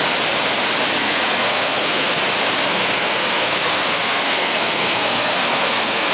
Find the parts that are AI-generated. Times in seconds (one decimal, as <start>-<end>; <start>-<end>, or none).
1.0-2.2; 2.7-6.1